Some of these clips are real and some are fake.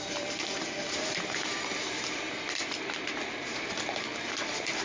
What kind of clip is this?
fake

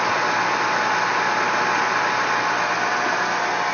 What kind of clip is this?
real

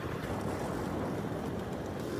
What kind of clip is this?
real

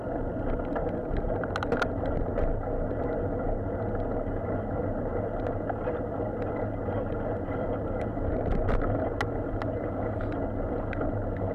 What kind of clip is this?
real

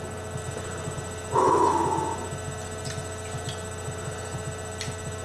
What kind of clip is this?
real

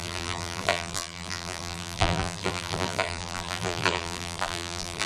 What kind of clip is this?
fake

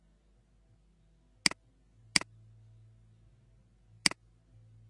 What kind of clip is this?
real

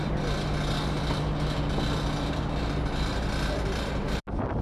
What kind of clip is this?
real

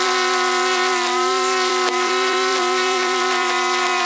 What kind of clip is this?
fake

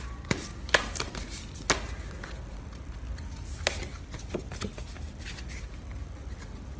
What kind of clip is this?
real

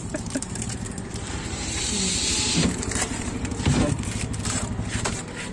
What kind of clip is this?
fake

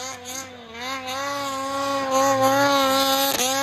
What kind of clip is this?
real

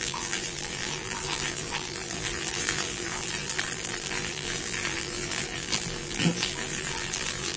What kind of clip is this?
fake